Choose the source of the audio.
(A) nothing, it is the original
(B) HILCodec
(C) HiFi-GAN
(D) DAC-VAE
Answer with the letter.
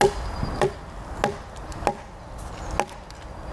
A